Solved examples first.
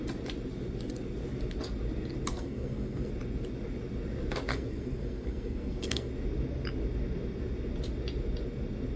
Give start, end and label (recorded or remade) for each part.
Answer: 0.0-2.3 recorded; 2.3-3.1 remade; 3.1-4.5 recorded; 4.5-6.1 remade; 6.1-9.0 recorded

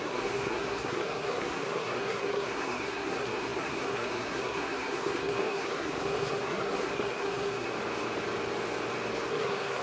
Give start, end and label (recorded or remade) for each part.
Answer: 0.0-7.7 remade; 7.7-9.3 recorded; 9.3-9.8 remade

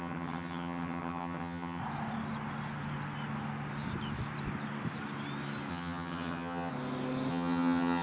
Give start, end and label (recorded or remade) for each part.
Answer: 0.0-1.8 remade; 1.8-5.7 recorded; 5.7-6.7 remade; 6.7-7.3 recorded; 7.3-8.0 remade

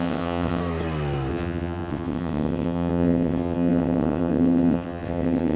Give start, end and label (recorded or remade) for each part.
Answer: 0.0-0.6 remade; 0.6-1.3 recorded; 1.3-5.6 remade

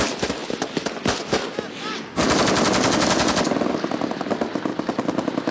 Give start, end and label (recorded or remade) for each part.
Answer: 0.0-5.5 recorded

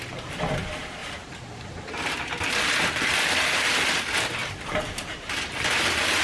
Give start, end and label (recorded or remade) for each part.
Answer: 0.0-1.0 recorded; 1.0-3.1 remade; 3.1-4.4 recorded; 4.4-6.2 remade